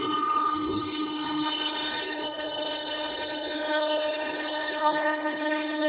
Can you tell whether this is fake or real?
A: fake